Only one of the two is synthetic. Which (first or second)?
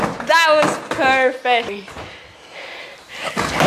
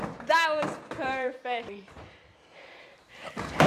second